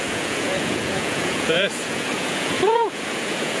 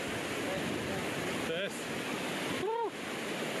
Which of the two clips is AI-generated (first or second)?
first